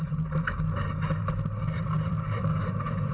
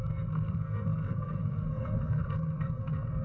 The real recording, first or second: first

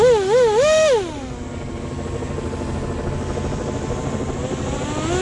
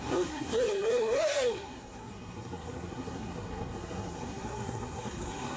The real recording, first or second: first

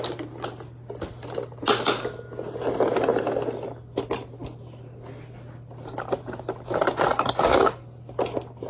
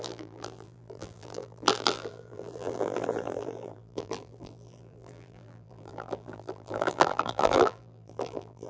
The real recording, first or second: first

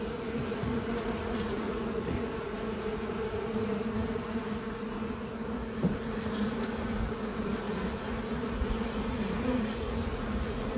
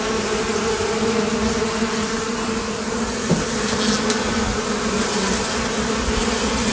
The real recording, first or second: second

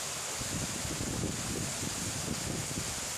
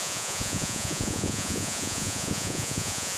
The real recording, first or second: first